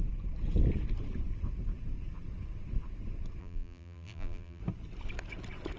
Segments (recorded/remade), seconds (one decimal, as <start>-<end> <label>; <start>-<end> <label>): 0.0-3.4 recorded; 3.4-4.6 remade; 4.6-5.8 recorded